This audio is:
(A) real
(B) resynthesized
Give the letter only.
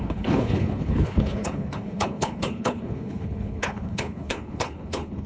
B